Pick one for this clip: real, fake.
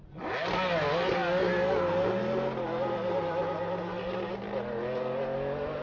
real